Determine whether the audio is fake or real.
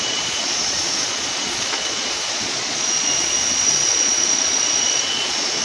fake